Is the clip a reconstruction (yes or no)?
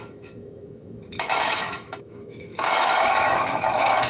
yes